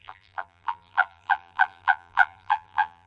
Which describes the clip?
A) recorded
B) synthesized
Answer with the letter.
B